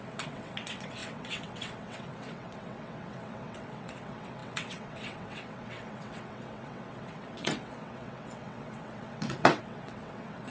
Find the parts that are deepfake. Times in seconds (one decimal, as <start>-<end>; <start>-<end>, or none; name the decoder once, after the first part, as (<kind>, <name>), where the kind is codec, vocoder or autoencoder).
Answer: 0.0-10.5 (vocoder, WaveNeXt)